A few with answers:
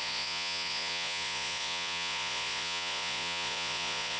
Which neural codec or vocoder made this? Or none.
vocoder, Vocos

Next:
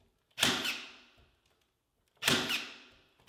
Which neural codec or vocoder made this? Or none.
none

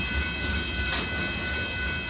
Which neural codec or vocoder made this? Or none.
none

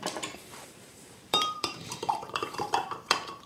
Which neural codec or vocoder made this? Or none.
vocoder, BigVGAN v2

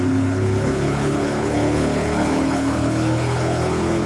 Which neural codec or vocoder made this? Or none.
codec, HILCodec